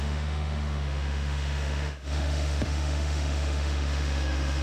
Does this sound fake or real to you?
fake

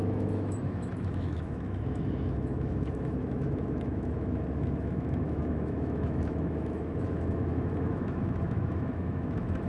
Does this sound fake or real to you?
fake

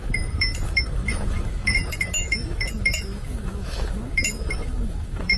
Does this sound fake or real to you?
fake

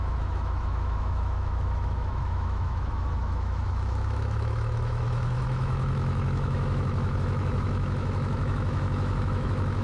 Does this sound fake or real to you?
fake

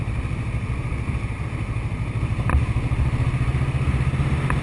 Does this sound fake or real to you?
real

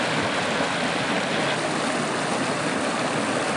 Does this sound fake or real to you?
real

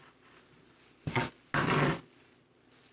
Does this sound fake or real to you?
real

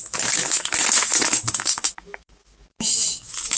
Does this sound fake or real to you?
fake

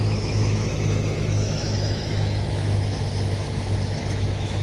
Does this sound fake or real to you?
fake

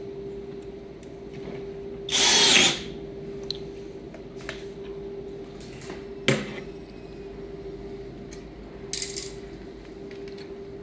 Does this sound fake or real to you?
real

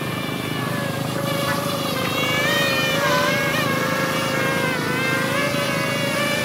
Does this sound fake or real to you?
real